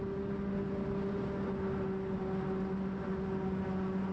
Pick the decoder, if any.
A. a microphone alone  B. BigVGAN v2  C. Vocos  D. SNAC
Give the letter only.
A